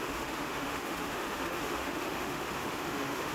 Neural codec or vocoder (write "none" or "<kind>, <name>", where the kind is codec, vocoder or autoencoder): autoencoder, DAC-VAE